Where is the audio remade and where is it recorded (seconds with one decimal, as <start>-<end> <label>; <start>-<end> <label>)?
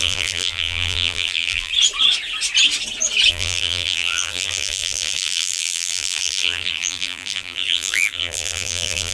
0.0-1.7 remade; 1.7-3.3 recorded; 3.3-9.1 remade